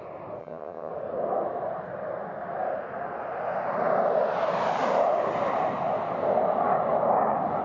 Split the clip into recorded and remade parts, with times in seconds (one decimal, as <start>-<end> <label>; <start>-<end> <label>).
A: 0.0-0.4 recorded; 0.4-0.9 remade; 0.9-7.6 recorded

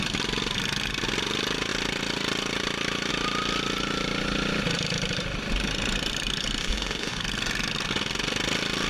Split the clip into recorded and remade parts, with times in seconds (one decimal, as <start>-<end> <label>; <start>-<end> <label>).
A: 0.0-6.6 recorded; 6.6-7.2 remade; 7.2-8.9 recorded

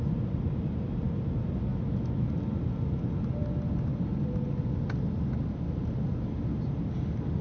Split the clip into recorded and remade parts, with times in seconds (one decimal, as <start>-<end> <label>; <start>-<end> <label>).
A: 0.0-1.7 recorded; 1.7-2.3 remade; 2.3-7.4 recorded

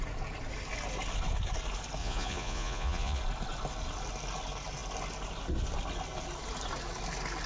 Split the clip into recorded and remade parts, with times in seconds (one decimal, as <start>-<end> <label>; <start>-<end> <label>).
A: 0.0-2.0 recorded; 2.0-3.2 remade; 3.2-7.5 recorded

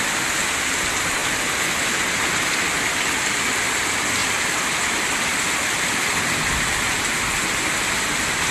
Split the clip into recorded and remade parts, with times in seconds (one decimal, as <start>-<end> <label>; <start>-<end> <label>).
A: 0.0-4.2 recorded; 4.2-6.0 remade; 6.0-8.5 recorded

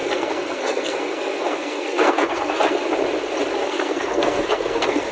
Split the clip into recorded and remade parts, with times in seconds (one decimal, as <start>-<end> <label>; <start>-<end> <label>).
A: 0.0-2.8 remade; 2.8-3.6 recorded; 3.6-5.1 remade

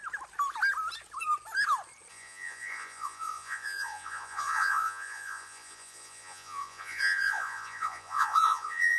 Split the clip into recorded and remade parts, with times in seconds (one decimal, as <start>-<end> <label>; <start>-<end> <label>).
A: 0.0-2.1 recorded; 2.1-9.0 remade

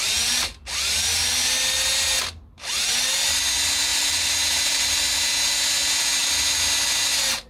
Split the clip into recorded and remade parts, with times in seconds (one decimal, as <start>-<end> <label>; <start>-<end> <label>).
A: 0.0-3.9 recorded; 3.9-5.0 remade; 5.0-7.5 recorded